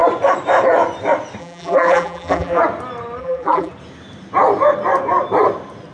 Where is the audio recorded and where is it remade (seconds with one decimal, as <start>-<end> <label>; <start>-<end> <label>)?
0.0-1.4 recorded; 1.4-2.6 remade; 2.6-3.2 recorded; 3.2-3.7 remade; 3.7-5.9 recorded